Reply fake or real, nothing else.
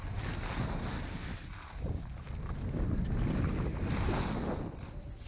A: real